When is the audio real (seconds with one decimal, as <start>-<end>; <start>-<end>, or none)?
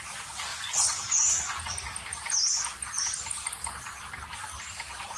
0.0-0.5; 1.6-5.2